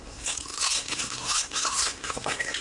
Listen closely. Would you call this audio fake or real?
fake